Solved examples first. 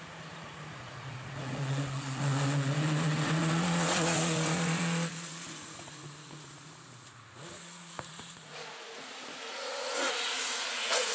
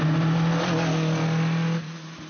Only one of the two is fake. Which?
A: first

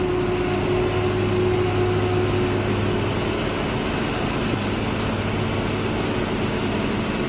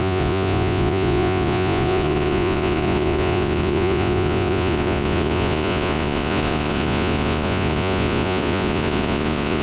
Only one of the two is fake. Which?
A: second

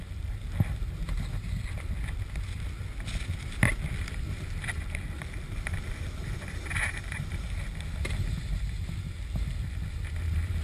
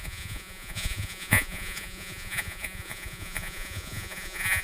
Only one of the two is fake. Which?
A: second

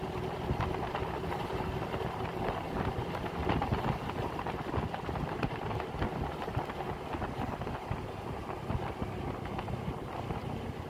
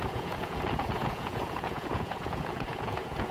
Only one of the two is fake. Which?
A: second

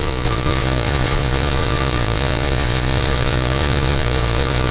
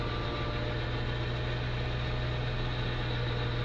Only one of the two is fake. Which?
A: first